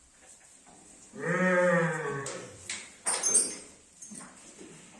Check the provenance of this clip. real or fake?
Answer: real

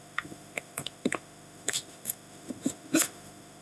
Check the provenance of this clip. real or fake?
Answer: fake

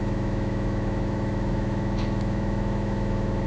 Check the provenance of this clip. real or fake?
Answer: fake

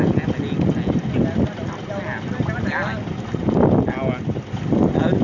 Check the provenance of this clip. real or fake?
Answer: real